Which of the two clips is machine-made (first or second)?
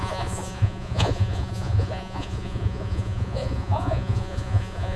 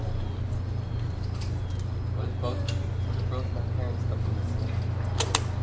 first